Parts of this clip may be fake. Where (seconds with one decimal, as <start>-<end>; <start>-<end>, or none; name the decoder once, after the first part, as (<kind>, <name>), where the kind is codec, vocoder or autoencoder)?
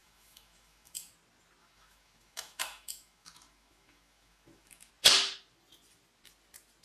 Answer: 0.0-1.1 (autoencoder, DAC-VAE); 1.6-4.9